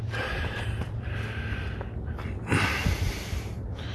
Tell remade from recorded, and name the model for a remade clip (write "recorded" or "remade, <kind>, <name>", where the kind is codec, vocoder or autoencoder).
remade, vocoder, BigVGAN v2